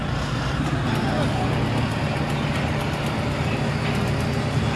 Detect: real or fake real